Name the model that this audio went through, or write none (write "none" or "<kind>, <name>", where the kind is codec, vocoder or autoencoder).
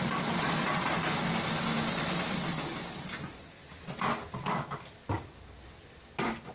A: none